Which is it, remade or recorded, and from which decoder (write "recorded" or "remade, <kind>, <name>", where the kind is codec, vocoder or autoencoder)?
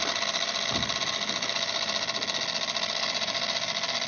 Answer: recorded